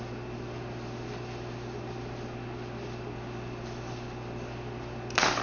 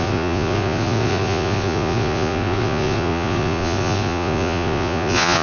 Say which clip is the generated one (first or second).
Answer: second